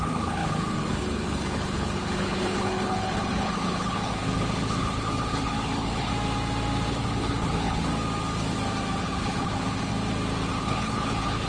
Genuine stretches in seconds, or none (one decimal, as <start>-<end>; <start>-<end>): 6.1-6.9; 7.9-9.0; 9.9-10.5